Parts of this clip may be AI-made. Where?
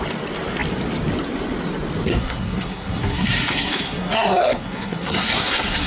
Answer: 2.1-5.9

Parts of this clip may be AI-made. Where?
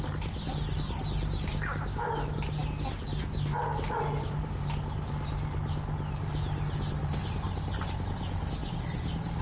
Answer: none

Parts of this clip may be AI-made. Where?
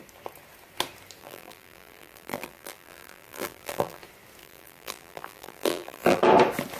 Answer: 1.2-4.0; 4.4-6.2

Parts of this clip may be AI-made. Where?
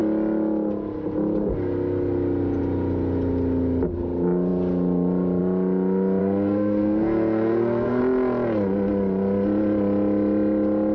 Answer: 6.2-8.0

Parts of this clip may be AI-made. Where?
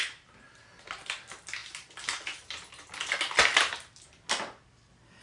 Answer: none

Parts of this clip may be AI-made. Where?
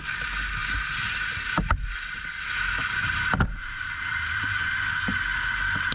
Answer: 0.6-2.5; 3.0-4.1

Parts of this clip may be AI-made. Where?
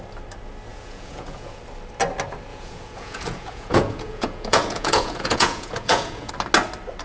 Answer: 0.7-1.6; 2.5-6.3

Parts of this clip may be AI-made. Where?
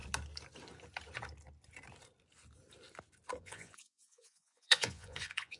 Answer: 3.4-5.6